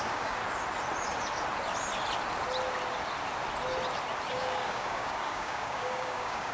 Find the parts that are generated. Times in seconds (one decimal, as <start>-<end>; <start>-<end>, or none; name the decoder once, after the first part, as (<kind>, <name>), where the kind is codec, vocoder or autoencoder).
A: 0.0-0.4 (codec, DAC); 4.3-6.5